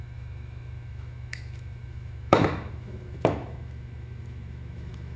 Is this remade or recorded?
remade